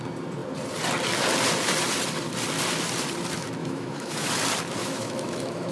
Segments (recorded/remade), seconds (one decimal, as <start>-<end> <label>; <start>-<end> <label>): 0.0-3.6 recorded; 3.6-4.3 remade; 4.3-4.8 recorded; 4.8-5.7 remade